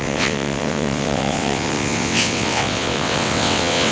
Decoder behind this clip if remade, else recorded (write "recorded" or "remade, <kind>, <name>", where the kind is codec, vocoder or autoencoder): remade, vocoder, WaveNeXt